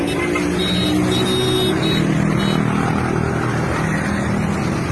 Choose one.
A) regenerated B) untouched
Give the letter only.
B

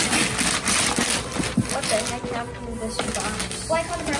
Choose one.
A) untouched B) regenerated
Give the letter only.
A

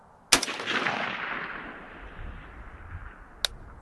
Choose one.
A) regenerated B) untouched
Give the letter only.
B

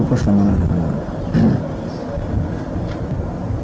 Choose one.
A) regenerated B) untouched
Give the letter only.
B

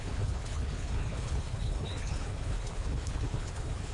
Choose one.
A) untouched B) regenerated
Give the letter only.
B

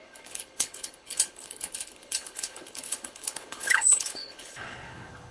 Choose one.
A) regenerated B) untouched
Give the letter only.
A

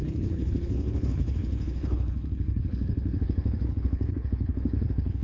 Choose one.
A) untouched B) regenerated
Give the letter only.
B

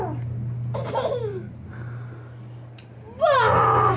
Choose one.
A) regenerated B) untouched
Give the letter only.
B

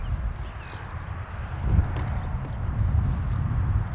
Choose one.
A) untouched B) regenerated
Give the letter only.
A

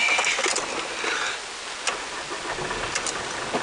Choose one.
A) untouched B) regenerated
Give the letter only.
A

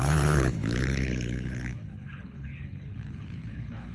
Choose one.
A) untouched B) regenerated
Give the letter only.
B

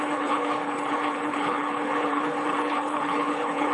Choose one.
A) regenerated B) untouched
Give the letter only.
A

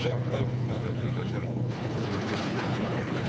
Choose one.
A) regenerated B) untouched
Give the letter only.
A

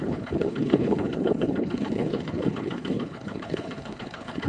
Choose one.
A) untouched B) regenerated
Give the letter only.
B